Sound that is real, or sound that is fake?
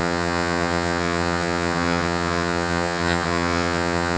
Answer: fake